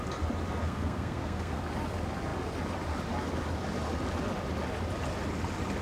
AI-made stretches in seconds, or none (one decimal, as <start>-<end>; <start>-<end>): 0.6-1.6